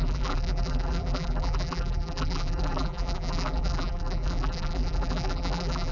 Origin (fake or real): fake